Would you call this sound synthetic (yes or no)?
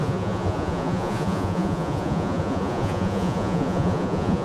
yes